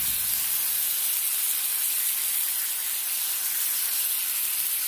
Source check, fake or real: real